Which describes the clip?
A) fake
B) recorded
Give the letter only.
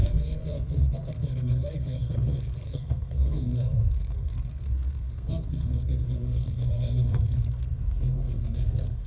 A